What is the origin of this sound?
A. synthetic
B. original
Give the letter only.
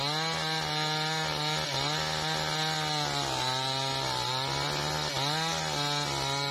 B